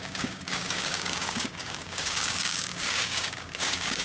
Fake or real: fake